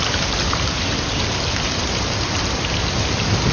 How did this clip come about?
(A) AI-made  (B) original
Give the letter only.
B